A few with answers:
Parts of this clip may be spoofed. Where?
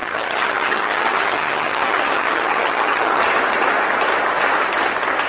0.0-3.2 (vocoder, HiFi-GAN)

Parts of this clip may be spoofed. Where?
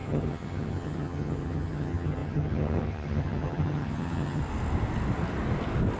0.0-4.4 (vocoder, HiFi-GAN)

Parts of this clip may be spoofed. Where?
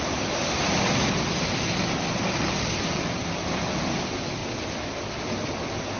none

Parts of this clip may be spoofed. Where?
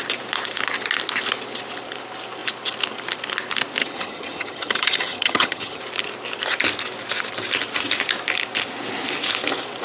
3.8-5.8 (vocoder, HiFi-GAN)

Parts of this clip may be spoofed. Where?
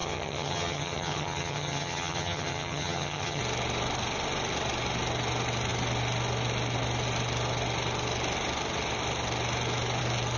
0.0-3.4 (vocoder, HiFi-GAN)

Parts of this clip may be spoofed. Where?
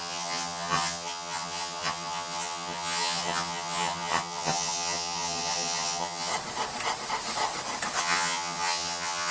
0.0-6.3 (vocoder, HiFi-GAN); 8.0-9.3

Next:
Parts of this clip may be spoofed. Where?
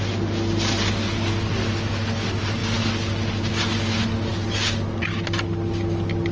none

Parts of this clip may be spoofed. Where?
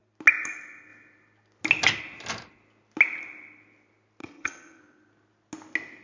4.2-4.8 (vocoder, HiFi-GAN)